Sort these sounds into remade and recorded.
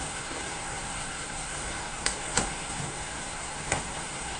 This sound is remade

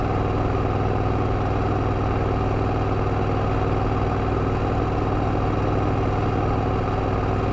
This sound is recorded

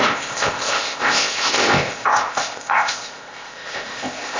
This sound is remade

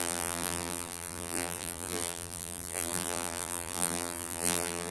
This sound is remade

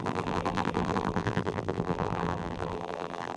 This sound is remade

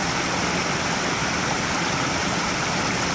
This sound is recorded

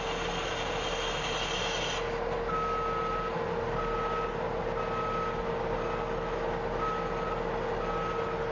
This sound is recorded